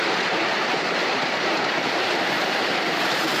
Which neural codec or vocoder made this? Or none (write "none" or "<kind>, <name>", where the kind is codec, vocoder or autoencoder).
vocoder, BigVGAN v2